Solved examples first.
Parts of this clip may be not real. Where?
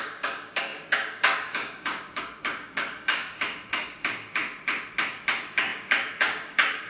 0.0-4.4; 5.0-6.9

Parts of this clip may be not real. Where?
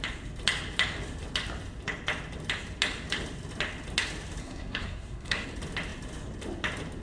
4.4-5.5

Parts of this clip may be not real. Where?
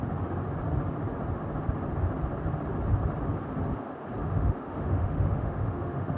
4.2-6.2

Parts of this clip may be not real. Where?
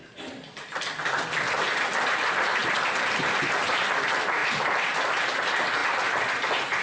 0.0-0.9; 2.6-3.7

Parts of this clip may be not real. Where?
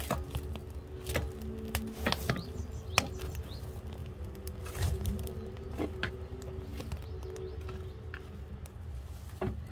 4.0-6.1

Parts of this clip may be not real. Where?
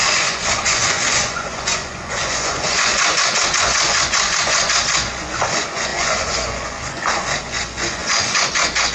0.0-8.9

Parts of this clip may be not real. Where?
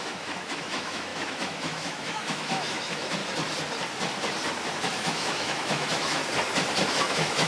0.0-3.2; 4.8-6.2; 6.9-7.5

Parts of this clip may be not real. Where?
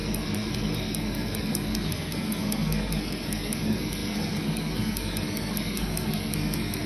0.0-6.9